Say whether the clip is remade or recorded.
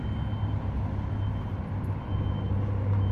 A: recorded